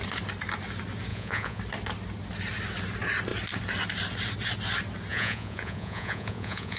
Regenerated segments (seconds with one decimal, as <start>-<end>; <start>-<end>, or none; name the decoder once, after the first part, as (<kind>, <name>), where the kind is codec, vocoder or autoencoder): 1.1-1.6 (vocoder, Vocos); 5.1-6.8